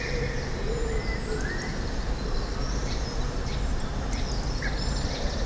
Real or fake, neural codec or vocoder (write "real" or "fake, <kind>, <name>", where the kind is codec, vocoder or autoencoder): real